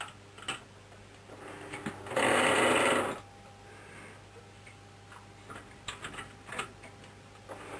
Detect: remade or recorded recorded